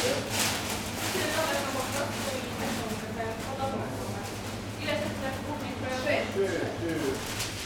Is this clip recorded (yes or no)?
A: yes